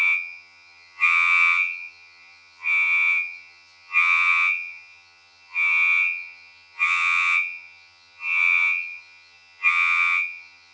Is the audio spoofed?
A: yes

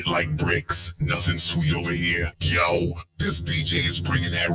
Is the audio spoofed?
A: yes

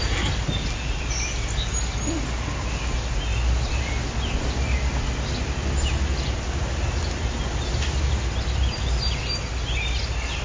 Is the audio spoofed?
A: no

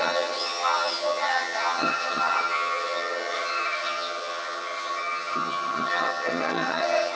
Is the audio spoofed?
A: yes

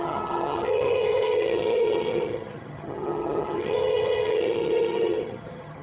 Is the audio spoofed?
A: yes